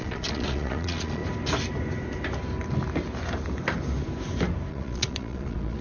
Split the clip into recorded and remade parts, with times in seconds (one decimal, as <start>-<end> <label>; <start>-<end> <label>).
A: 0.0-1.2 remade; 1.2-4.7 recorded; 4.7-5.8 remade